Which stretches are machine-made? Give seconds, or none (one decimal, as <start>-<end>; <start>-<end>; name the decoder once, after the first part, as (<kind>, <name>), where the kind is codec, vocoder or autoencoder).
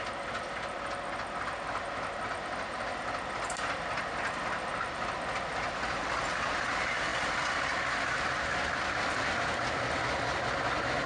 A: none